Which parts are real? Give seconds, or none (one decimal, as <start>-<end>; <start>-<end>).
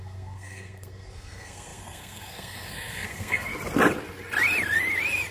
3.5-5.3